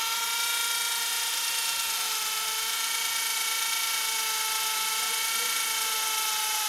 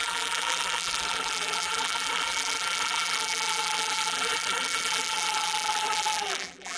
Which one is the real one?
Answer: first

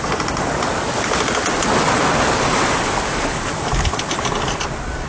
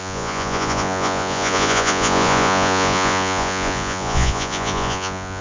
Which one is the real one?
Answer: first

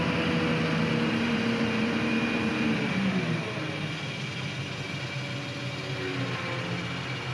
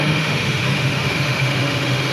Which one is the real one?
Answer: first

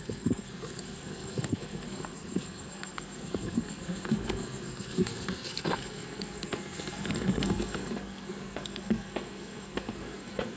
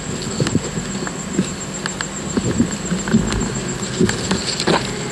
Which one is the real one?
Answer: second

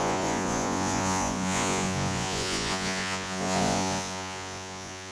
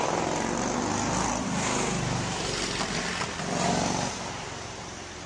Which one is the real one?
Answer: second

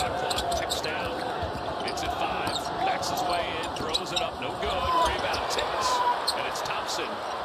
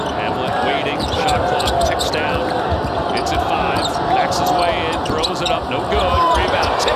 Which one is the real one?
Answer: second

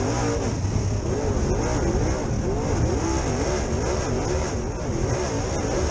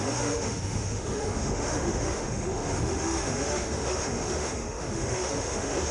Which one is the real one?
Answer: first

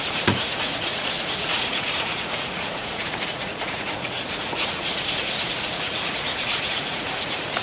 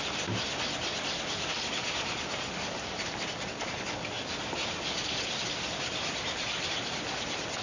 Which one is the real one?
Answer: second